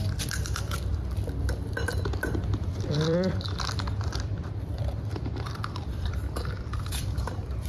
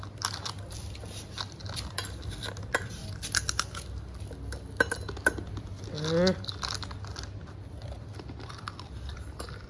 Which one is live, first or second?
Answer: second